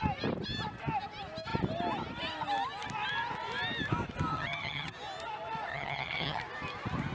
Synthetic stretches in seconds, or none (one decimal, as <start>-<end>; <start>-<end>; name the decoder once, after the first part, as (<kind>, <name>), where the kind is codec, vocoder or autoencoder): 4.3-4.9 (vocoder, HiFi-GAN); 5.7-6.4